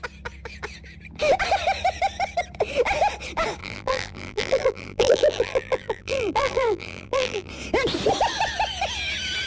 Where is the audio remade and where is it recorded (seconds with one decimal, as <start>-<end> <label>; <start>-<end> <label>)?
0.0-3.6 recorded; 3.6-7.5 remade; 7.5-9.5 recorded